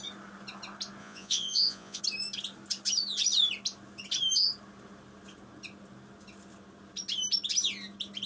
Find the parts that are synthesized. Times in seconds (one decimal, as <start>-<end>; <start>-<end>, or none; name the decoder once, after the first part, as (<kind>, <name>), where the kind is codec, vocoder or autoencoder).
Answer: 1.0-2.0 (vocoder, Vocos)